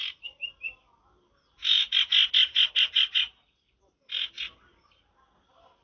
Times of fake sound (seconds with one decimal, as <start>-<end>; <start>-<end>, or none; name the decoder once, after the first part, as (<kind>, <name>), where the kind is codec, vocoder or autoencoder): 0.0-2.5 (vocoder, BigVGAN v2)

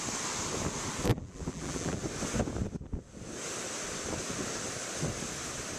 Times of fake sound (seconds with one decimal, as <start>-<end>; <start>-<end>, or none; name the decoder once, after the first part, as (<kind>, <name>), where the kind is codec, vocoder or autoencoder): 1.1-2.0 (vocoder, BigVGAN v2)

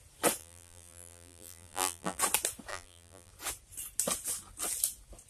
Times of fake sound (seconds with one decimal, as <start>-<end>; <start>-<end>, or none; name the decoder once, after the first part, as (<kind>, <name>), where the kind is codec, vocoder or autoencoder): 0.4-2.2 (vocoder, BigVGAN v2); 2.7-3.3

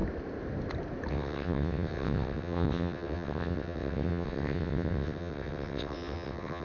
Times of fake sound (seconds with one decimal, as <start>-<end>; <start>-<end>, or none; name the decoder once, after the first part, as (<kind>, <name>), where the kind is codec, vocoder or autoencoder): 1.1-6.6 (vocoder, WaveNeXt)

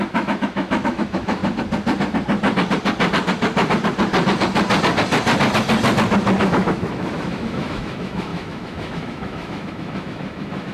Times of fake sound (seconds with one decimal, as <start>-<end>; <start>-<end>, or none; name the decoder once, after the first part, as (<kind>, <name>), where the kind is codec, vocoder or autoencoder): 0.0-1.4 (autoencoder, DAC-VAE); 6.4-10.7

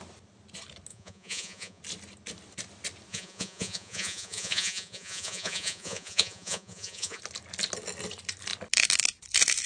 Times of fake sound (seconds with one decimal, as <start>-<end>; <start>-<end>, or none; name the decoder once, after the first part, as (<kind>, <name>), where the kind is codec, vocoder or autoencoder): 0.9-1.8 (vocoder, Vocos); 3.1-7.2

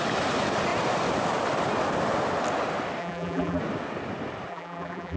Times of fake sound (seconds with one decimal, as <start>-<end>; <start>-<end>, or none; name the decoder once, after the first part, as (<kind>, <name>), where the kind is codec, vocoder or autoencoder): 3.0-3.6 (vocoder, BigVGAN v2); 4.5-5.2